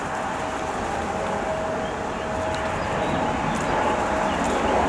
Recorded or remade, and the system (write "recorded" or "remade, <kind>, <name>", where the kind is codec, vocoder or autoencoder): recorded